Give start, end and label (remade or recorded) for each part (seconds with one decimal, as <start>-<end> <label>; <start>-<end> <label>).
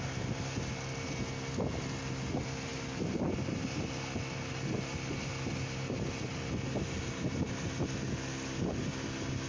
0.0-9.5 recorded